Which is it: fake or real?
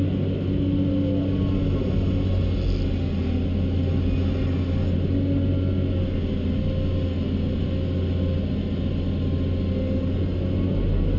real